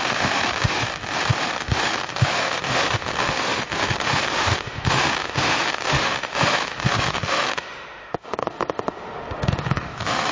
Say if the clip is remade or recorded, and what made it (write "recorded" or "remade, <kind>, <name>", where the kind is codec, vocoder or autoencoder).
remade, autoencoder, DAC-VAE